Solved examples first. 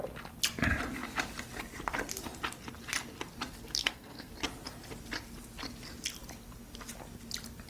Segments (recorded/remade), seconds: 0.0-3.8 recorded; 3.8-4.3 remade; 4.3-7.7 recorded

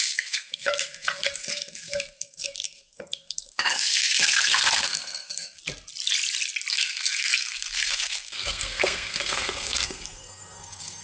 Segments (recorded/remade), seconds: 0.0-5.6 remade; 5.6-6.7 recorded; 6.7-11.0 remade

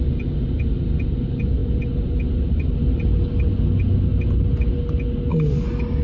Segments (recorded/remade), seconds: 0.0-6.0 recorded

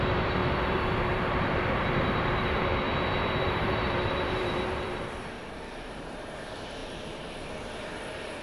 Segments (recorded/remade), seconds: 0.0-2.7 remade; 2.7-3.4 recorded; 3.4-8.4 remade

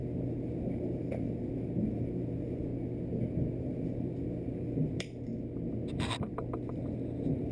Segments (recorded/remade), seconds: 0.0-2.7 remade; 2.7-3.6 recorded; 3.6-5.3 remade; 5.3-5.9 recorded; 5.9-7.5 remade